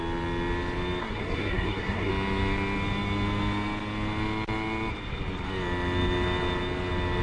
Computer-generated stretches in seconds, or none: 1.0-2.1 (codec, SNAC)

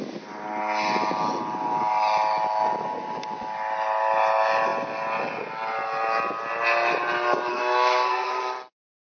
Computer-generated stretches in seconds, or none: 7.5-8.4 (codec, SNAC)

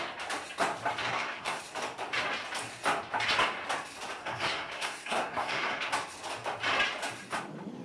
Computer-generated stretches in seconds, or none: 1.0-1.6 (codec, SNAC); 4.2-5.9

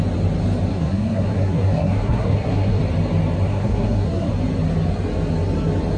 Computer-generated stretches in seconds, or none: 0.7-2.8 (codec, SNAC); 3.5-4.3

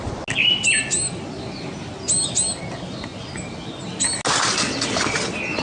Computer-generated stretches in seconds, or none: none

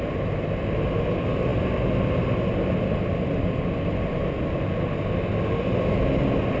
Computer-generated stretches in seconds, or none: none